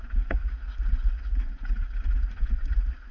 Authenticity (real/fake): fake